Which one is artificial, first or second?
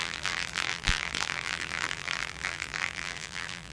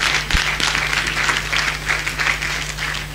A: first